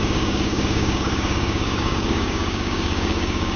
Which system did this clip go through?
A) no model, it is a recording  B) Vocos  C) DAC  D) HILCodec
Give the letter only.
C